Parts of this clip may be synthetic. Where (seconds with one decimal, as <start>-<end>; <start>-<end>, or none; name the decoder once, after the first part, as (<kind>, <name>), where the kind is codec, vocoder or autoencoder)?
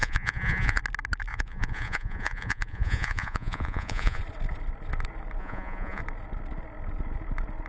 0.0-0.8 (vocoder, Vocos); 1.3-4.2; 5.4-6.0